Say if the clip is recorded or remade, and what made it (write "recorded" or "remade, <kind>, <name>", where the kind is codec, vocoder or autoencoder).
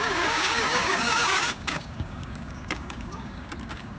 remade, codec, DAC